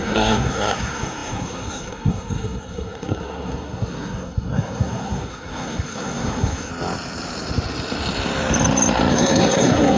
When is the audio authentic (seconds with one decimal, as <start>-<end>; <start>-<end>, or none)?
6.7-9.1